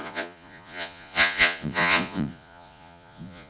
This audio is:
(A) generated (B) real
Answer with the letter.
A